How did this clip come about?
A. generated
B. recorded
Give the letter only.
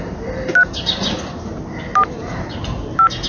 B